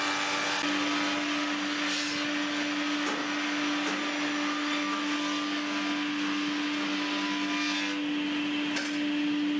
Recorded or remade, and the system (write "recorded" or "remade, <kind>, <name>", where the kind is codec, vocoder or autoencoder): recorded